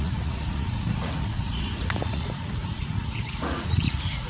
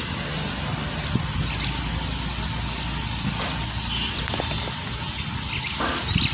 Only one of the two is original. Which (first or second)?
second